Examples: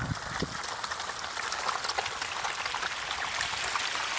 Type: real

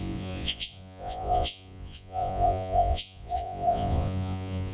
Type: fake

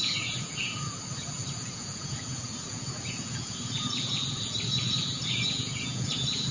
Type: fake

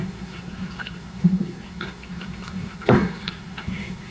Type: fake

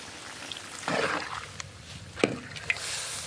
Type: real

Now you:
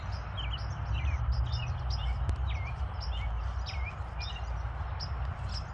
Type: real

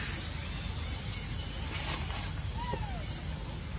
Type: real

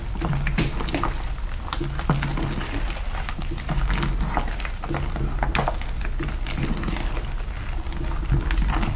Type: real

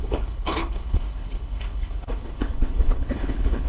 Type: fake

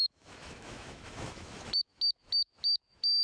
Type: fake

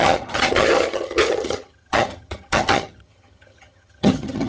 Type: fake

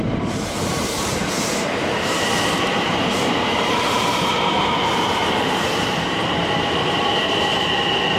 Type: fake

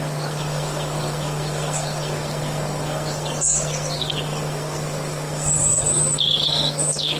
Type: fake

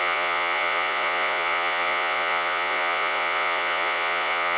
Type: fake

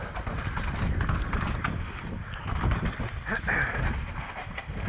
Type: real